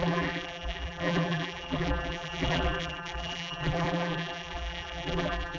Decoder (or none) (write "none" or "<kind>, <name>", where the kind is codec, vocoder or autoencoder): vocoder, BigVGAN v2